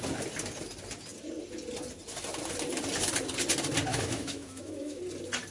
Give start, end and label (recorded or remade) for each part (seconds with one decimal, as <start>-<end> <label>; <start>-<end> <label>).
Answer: 0.0-3.9 recorded; 3.9-5.0 remade; 5.0-5.5 recorded